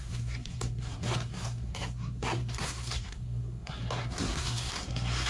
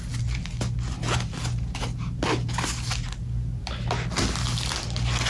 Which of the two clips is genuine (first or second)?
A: second